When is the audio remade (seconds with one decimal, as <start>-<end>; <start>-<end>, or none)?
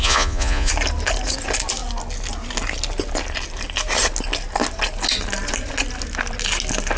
0.0-0.7